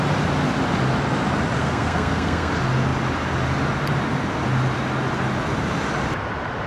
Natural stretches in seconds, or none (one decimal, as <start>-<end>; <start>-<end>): 0.0-1.6; 2.5-6.7